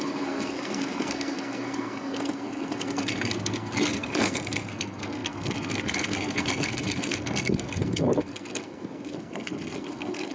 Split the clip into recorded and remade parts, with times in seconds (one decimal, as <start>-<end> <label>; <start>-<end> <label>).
0.0-10.3 remade